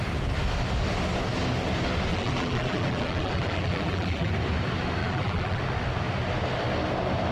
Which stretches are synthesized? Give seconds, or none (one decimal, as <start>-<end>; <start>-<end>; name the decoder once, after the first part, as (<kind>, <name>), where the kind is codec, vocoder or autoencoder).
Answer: 2.1-4.3 (vocoder, BigVGAN v2); 5.0-5.6